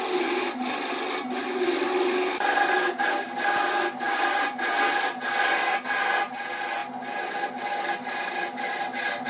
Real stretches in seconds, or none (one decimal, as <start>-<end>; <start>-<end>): 0.0-9.3